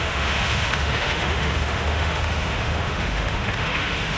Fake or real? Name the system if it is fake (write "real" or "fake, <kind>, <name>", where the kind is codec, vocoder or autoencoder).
fake, autoencoder, DAC-VAE